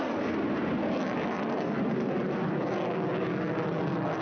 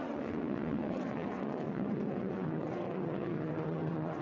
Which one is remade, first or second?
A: second